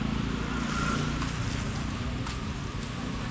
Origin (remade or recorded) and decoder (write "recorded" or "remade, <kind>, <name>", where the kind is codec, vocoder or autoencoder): recorded